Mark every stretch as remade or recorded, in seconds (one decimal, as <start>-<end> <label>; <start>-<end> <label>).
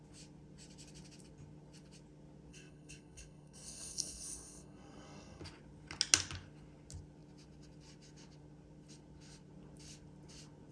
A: 0.0-2.5 recorded; 2.5-5.4 remade; 5.4-10.7 recorded